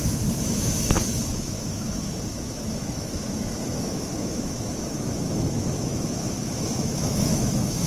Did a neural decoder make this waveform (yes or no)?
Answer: yes